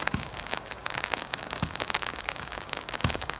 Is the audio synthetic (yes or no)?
yes